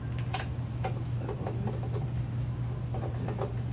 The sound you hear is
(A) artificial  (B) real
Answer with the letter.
B